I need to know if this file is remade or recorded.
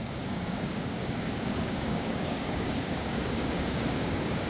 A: remade